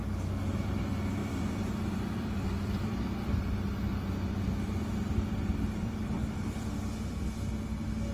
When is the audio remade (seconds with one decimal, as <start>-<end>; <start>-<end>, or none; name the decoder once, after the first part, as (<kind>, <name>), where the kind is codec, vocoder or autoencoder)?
1.2-2.8 (vocoder, BigVGAN v2); 5.5-7.2